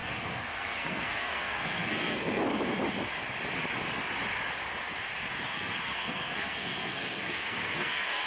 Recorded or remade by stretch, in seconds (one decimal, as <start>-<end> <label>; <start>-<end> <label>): 0.0-2.4 remade; 2.4-5.5 recorded; 5.5-8.3 remade